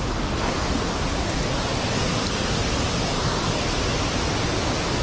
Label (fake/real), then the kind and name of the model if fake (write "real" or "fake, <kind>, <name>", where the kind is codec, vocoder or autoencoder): real